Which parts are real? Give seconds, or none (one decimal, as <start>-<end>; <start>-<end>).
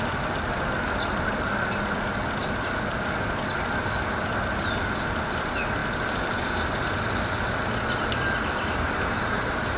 0.0-2.4; 3.0-5.8; 8.9-9.8